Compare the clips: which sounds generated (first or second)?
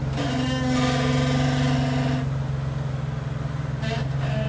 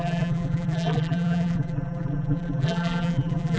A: second